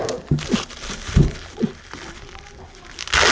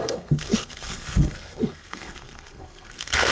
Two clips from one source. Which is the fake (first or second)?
second